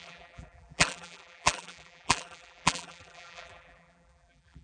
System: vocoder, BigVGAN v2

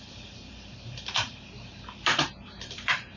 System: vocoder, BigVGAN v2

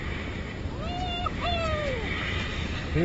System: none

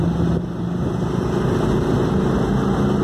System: none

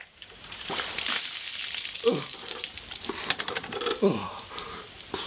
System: vocoder, BigVGAN v2